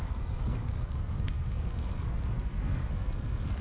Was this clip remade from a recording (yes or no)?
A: yes